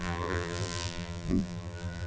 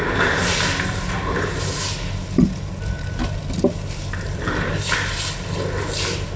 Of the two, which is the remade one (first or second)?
first